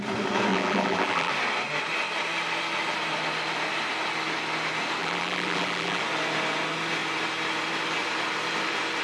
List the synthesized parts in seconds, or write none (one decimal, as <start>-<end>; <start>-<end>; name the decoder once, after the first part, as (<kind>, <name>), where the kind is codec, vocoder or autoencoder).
0.5-1.3 (vocoder, BigVGAN v2); 5.0-6.0